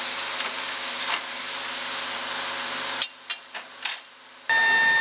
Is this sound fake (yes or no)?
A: no